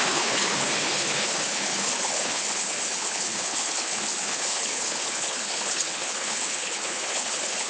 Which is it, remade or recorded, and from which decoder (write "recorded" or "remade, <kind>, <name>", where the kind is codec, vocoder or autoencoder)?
remade, codec, HILCodec